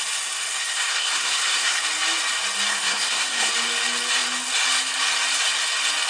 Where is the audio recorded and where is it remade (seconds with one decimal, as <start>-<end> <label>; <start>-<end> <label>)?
0.0-0.6 recorded; 0.6-1.8 remade; 1.8-2.7 recorded; 2.7-3.5 remade; 3.5-6.1 recorded